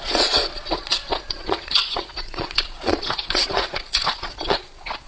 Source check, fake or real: fake